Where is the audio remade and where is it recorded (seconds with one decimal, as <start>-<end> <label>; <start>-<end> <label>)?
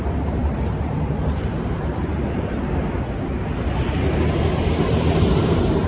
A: 0.0-2.6 remade; 2.6-4.8 recorded; 4.8-5.9 remade